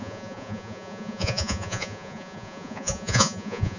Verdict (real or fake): fake